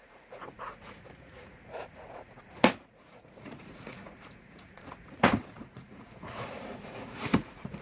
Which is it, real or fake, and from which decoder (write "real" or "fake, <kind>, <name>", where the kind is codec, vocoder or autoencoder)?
fake, vocoder, Vocos